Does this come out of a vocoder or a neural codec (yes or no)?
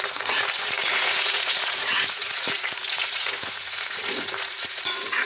yes